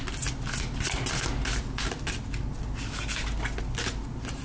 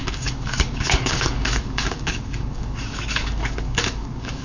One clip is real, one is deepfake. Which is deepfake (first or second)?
second